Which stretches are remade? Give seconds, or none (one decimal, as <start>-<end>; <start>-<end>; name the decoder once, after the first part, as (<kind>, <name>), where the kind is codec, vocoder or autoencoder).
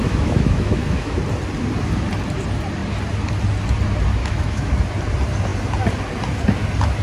0.0-1.2 (autoencoder, DAC-VAE); 4.2-4.7